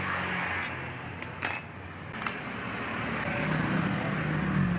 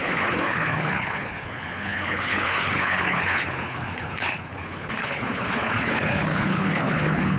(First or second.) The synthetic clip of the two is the second